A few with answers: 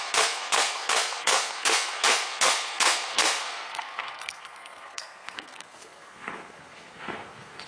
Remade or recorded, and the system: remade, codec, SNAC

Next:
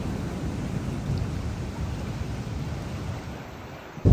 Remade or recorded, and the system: recorded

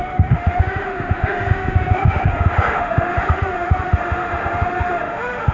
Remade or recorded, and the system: remade, autoencoder, DAC-VAE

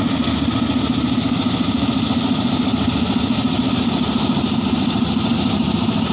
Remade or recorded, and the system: recorded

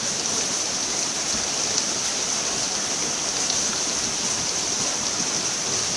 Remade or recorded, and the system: recorded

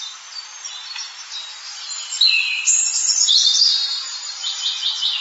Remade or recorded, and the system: recorded